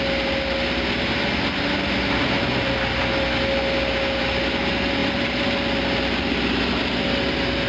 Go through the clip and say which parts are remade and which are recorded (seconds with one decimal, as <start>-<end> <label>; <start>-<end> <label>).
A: 0.0-5.0 recorded; 5.0-6.8 remade; 6.8-7.7 recorded